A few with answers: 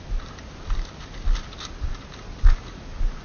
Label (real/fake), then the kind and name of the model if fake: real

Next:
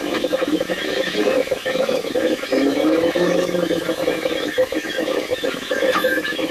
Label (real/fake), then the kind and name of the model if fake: fake, autoencoder, DAC-VAE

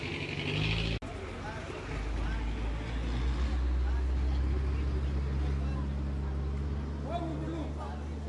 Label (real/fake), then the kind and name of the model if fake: real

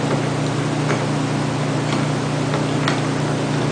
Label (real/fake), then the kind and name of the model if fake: real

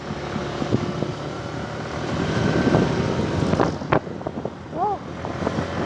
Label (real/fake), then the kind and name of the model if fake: real